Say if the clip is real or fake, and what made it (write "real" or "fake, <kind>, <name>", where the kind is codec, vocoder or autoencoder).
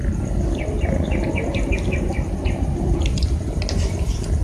real